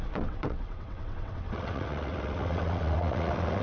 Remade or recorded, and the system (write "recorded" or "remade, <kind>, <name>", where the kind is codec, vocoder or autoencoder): remade, vocoder, WaveNeXt